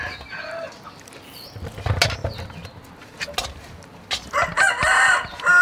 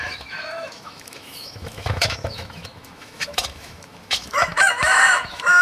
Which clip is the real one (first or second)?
first